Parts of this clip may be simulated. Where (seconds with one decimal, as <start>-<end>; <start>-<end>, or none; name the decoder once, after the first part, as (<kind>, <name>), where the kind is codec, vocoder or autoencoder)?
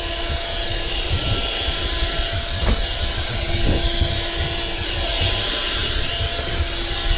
5.8-6.6 (vocoder, BigVGAN v2)